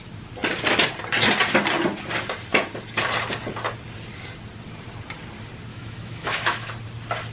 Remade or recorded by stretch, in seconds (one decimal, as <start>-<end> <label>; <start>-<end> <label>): 0.0-5.7 recorded; 5.7-6.7 remade; 6.7-7.3 recorded